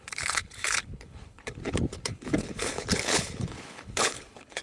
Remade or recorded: remade